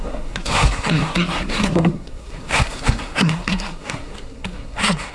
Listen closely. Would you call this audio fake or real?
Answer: fake